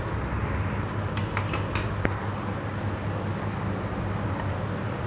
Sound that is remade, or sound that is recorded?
recorded